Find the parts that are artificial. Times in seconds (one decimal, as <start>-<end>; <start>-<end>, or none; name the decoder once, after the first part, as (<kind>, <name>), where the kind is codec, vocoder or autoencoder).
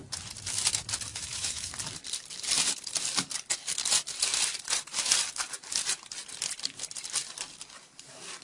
1.1-1.7 (autoencoder, DAC-VAE)